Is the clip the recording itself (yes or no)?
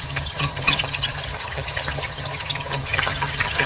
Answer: no